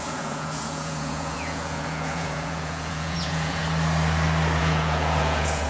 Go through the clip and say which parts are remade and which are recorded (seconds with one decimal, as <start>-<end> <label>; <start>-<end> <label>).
0.0-3.6 remade; 3.6-4.6 recorded; 4.6-5.7 remade